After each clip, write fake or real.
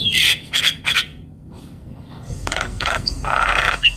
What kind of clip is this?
fake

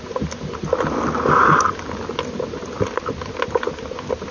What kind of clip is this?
real